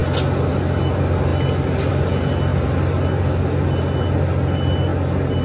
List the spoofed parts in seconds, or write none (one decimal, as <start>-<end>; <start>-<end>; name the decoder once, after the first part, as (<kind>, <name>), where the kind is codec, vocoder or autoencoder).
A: none